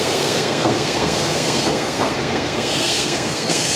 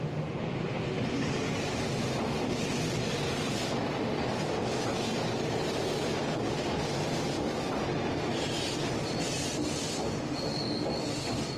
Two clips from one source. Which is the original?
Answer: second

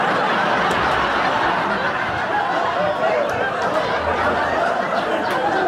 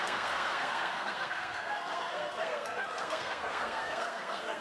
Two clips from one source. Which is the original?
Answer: first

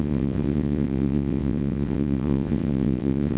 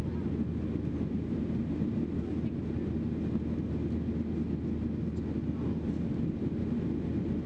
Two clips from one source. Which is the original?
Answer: second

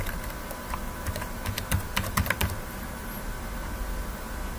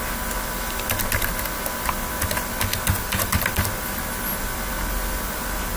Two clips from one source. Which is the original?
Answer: second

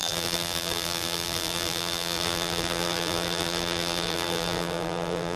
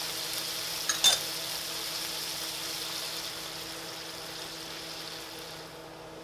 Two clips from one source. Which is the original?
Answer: second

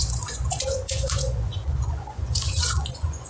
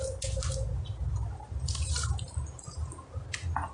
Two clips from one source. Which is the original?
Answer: second